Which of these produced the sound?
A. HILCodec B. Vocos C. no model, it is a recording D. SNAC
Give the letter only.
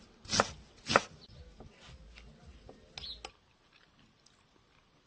C